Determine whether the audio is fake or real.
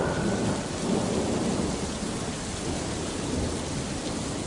real